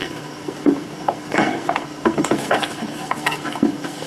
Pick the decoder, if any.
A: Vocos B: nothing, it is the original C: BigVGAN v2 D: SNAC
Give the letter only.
D